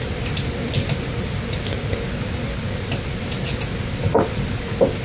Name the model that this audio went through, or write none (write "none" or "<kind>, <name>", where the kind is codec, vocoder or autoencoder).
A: none